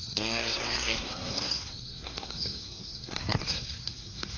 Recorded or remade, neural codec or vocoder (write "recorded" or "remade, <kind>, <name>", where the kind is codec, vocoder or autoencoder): remade, codec, SNAC